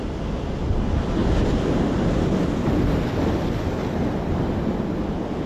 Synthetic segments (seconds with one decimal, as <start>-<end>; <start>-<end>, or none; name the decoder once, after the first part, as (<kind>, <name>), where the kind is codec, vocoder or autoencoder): none